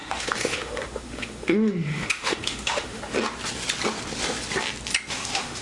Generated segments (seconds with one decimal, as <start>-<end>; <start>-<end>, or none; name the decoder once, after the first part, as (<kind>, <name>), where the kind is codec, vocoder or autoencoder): 0.0-3.0 (autoencoder, DAC-VAE); 5.1-5.6